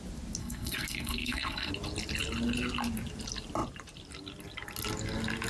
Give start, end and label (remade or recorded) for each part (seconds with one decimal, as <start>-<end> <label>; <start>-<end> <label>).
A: 0.0-0.4 recorded; 0.4-1.7 remade; 1.7-5.5 recorded